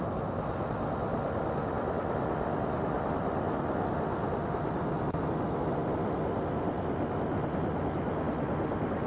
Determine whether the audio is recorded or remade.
recorded